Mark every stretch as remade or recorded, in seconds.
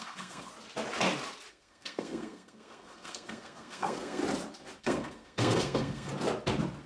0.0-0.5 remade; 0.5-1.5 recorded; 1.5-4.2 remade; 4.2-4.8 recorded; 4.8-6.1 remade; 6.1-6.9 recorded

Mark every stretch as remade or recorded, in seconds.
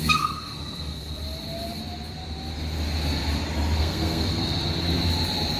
0.0-1.2 remade; 1.2-3.8 recorded; 3.8-4.6 remade; 4.6-5.6 recorded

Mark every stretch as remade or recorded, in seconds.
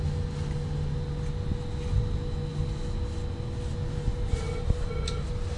0.0-5.6 recorded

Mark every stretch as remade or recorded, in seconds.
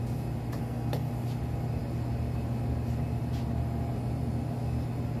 0.0-0.6 recorded; 0.6-1.1 remade; 1.1-5.2 recorded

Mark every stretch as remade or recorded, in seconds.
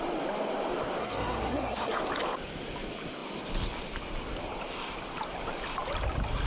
0.0-1.0 recorded; 1.0-2.0 remade; 2.0-6.5 recorded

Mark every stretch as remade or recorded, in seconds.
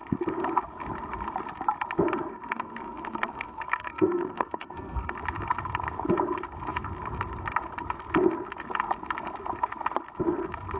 0.0-2.3 recorded; 2.3-5.1 remade; 5.1-10.8 recorded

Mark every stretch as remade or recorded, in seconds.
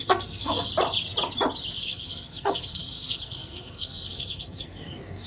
0.0-0.7 remade; 0.7-1.8 recorded; 1.8-5.3 remade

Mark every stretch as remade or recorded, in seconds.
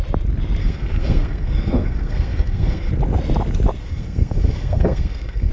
0.0-0.6 recorded; 0.6-2.9 remade; 2.9-3.8 recorded; 3.8-5.5 remade